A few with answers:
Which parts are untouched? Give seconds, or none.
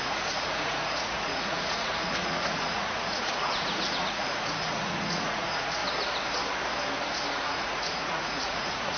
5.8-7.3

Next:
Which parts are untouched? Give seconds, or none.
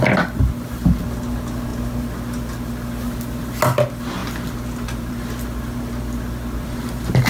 0.0-7.3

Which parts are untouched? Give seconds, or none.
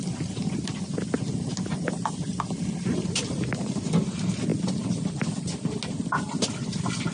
0.0-7.1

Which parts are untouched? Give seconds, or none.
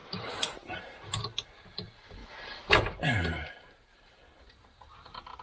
1.2-2.2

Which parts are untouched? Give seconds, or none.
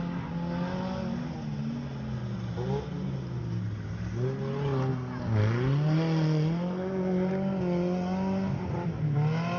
0.0-9.6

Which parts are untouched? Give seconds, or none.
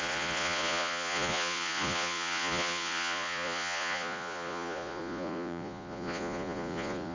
none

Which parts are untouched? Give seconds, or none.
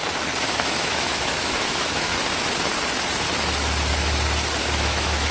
0.0-0.5; 2.1-4.6